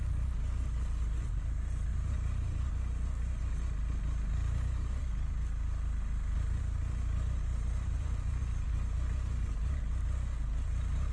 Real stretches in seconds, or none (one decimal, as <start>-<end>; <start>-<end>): 0.0-1.9; 2.7-7.5; 8.8-11.1